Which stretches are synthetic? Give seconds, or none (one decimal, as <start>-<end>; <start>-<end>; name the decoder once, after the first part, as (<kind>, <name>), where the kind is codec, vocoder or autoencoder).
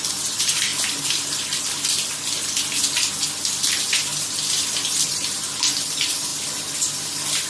0.0-0.7 (vocoder, BigVGAN v2); 3.6-4.1; 5.0-6.3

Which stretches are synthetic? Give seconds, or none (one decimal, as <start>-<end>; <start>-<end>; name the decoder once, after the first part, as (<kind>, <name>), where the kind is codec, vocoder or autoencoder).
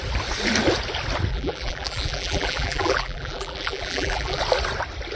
1.3-4.4 (vocoder, BigVGAN v2)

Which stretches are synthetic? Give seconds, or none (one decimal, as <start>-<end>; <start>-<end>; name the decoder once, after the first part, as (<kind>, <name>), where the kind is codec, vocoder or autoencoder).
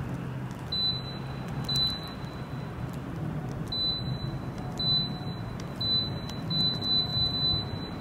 none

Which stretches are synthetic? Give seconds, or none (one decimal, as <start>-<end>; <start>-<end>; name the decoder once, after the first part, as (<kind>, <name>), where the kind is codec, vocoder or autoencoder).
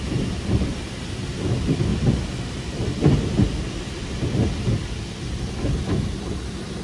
0.0-1.9 (vocoder, BigVGAN v2); 2.5-6.8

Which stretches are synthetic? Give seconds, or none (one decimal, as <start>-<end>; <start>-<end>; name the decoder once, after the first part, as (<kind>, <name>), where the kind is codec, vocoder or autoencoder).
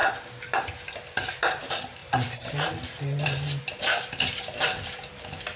2.0-5.6 (vocoder, BigVGAN v2)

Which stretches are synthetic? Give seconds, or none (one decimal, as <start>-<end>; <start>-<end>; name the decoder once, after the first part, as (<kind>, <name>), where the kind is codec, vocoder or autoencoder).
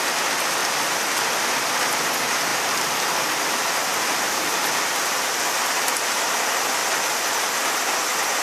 0.6-1.2 (vocoder, BigVGAN v2); 3.9-5.0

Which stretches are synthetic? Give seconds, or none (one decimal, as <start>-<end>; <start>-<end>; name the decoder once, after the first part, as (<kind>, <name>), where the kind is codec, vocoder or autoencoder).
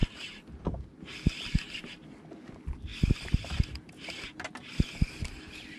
none